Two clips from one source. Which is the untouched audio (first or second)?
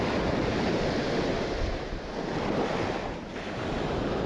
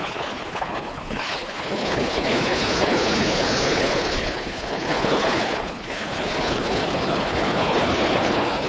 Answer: first